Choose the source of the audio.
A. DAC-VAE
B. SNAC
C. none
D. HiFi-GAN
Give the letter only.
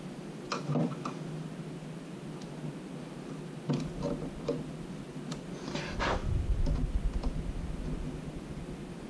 C